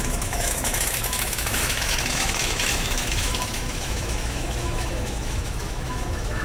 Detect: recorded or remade remade